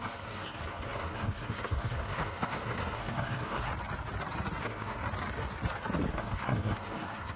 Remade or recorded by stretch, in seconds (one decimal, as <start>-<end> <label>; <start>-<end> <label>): 0.0-3.7 remade; 3.7-4.6 recorded; 4.6-5.0 remade; 5.0-6.1 recorded; 6.1-7.4 remade